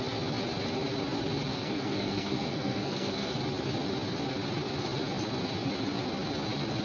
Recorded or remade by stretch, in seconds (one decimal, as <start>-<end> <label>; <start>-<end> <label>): 0.0-1.5 recorded; 1.5-3.4 remade; 3.4-6.8 recorded